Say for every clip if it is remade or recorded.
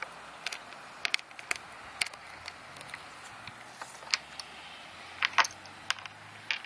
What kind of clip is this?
recorded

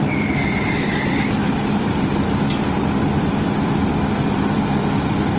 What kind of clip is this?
recorded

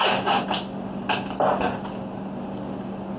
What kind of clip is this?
recorded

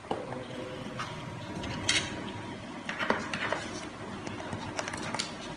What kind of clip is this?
recorded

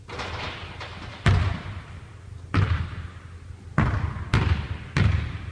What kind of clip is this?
recorded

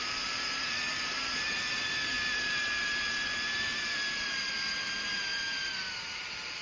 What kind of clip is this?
remade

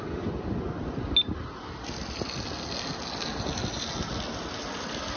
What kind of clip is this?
recorded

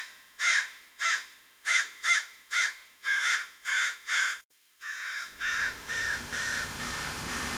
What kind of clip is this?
remade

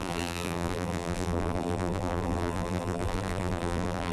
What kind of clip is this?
remade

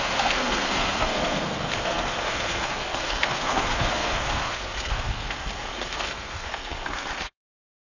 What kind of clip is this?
remade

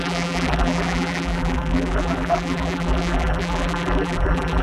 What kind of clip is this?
remade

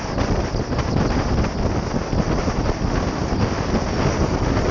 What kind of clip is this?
recorded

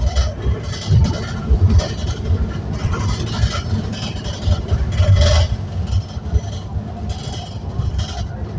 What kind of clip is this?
recorded